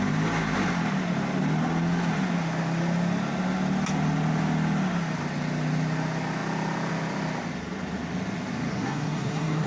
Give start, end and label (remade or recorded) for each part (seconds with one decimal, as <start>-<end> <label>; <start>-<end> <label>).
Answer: 0.0-8.7 recorded; 8.7-9.7 remade

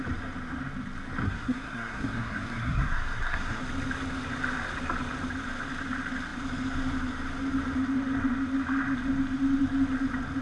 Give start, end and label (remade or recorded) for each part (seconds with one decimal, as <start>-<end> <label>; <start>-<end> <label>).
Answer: 0.0-1.2 recorded; 1.2-3.6 remade; 3.6-10.4 recorded

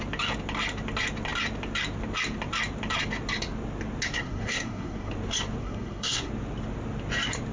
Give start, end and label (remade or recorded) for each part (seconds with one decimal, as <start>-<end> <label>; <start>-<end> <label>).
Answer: 0.0-4.1 recorded; 4.1-5.1 remade; 5.1-5.6 recorded; 5.6-6.3 remade; 6.3-7.5 recorded

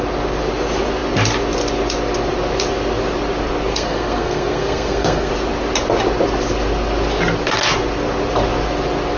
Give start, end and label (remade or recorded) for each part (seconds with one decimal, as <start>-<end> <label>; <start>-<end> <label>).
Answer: 0.0-3.7 recorded; 3.7-5.3 remade; 5.3-9.2 recorded